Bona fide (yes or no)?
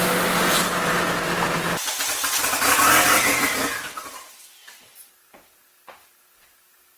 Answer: yes